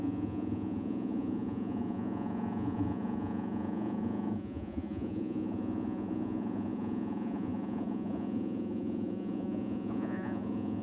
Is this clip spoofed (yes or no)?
yes